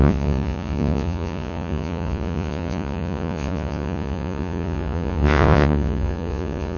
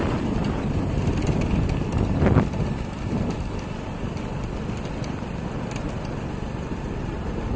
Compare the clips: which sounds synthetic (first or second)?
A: first